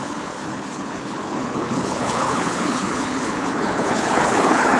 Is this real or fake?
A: fake